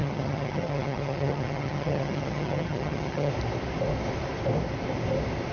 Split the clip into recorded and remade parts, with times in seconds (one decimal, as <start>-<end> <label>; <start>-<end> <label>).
0.0-3.3 remade; 3.3-5.5 recorded